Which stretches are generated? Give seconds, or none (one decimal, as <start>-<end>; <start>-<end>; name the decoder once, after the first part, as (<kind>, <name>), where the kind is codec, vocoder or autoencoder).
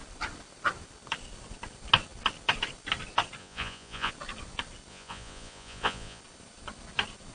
3.4-4.1 (vocoder, Vocos); 4.9-6.2